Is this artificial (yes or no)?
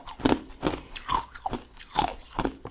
no